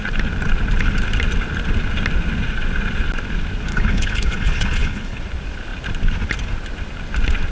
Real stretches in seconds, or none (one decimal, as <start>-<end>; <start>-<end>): 0.0-3.7; 5.2-7.5